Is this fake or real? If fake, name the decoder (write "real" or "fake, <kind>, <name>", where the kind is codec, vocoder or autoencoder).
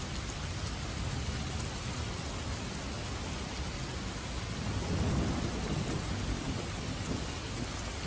real